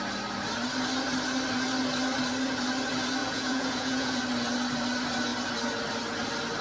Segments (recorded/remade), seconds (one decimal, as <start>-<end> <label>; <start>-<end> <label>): 0.0-3.2 recorded; 3.2-4.2 remade; 4.2-6.6 recorded